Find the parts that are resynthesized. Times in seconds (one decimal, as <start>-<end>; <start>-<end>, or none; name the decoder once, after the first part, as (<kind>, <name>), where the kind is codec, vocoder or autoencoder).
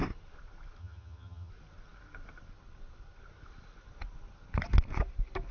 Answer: 0.8-1.5 (vocoder, HiFi-GAN)